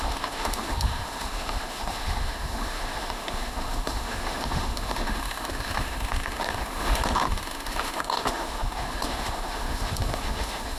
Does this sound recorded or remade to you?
remade